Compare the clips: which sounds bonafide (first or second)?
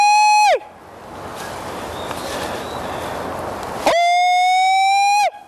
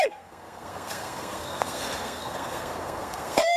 first